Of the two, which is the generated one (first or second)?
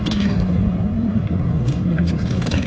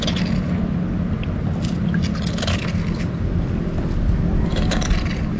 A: first